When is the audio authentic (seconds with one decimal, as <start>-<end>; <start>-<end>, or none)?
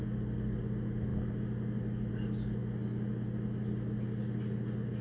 0.0-5.0